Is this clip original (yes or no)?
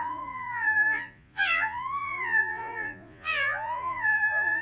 no